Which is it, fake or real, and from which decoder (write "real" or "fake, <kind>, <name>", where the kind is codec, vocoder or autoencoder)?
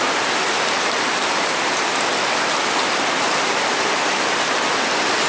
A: real